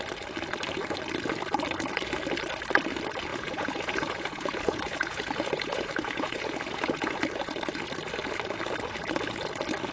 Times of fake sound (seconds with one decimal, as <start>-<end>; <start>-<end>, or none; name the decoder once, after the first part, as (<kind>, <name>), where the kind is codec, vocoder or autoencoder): 3.3-7.2 (vocoder, Vocos)